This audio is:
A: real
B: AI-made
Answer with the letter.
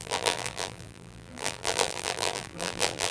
B